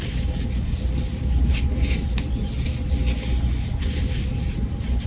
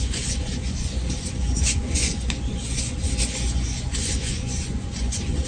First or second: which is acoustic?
first